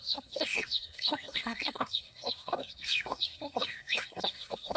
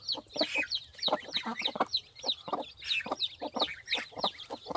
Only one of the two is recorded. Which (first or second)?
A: second